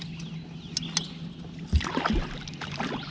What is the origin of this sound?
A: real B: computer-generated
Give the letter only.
A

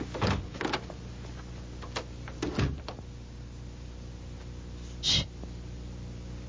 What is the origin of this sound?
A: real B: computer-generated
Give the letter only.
A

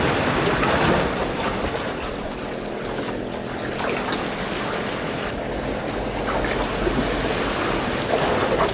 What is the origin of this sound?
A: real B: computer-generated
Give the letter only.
A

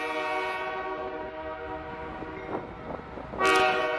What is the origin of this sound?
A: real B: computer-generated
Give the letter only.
A